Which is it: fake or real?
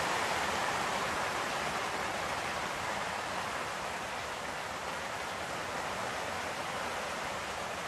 real